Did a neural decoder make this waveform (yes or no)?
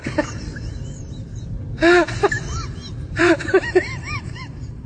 yes